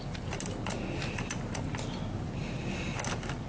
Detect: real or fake real